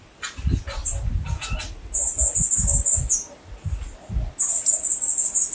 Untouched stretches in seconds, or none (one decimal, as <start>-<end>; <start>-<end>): 0.0-5.5